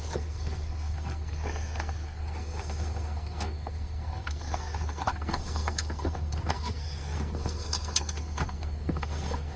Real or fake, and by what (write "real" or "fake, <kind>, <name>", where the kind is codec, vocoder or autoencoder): fake, codec, SNAC